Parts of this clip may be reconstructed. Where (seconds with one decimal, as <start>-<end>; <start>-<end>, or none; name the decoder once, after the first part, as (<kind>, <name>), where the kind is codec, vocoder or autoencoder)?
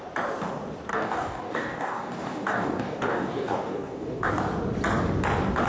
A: 0.9-4.3 (codec, DAC)